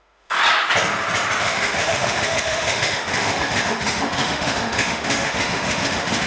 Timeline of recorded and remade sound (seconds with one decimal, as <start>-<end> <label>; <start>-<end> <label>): 0.0-0.4 remade; 0.4-1.4 recorded; 1.4-6.3 remade